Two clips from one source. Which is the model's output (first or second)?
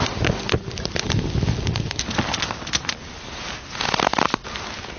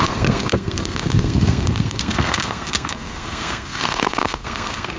second